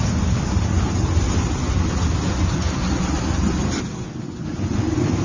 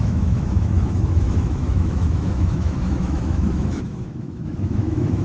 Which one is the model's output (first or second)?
second